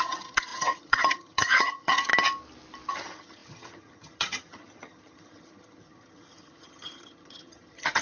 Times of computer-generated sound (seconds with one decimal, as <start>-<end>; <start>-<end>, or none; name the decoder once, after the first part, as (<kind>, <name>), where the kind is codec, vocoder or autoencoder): 0.0-2.1 (vocoder, HiFi-GAN); 2.9-8.0